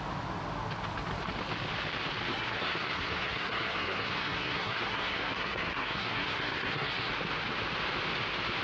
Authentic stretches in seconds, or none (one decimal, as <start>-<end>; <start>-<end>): 0.0-2.3; 7.1-8.6